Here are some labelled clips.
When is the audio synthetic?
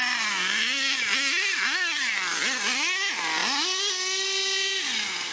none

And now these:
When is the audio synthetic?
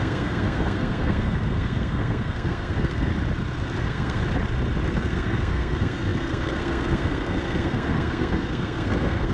0.0-3.1 (codec, SNAC); 3.8-4.2; 4.9-9.3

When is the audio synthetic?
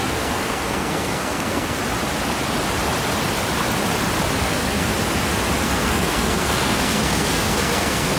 0.0-1.8 (codec, SNAC); 4.4-4.9; 5.6-8.2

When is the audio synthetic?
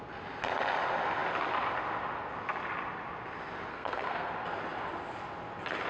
3.7-4.3 (codec, SNAC)